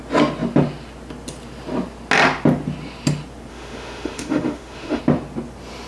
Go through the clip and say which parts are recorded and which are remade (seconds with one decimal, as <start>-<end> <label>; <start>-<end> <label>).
0.0-3.5 recorded; 3.5-5.0 remade; 5.0-5.9 recorded

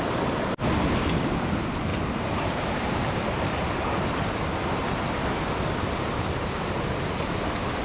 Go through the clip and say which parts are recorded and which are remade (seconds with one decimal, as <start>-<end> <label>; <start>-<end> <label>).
0.0-1.9 recorded; 1.9-3.7 remade; 3.7-7.8 recorded

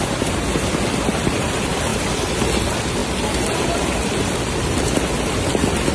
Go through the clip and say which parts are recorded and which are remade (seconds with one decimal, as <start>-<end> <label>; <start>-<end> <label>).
0.0-5.9 recorded

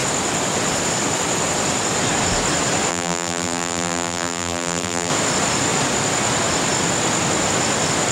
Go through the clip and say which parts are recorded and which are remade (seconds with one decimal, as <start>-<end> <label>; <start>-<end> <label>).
0.0-2.9 recorded; 2.9-5.1 remade; 5.1-8.1 recorded

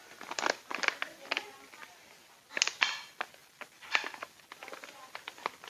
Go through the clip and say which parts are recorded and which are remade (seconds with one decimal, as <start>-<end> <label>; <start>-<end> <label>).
0.0-5.7 recorded

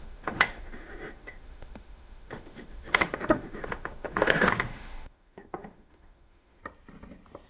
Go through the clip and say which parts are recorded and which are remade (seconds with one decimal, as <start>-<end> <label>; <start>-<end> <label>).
0.0-6.6 remade; 6.6-7.5 recorded

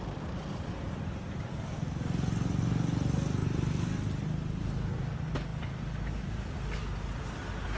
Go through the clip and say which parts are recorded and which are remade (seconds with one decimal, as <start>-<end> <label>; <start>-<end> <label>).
0.0-7.8 recorded

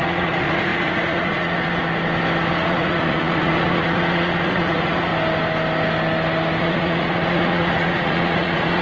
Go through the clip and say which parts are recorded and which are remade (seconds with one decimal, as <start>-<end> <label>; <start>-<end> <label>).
0.0-1.8 remade; 1.8-2.5 recorded; 2.5-5.1 remade; 5.1-6.6 recorded; 6.6-8.8 remade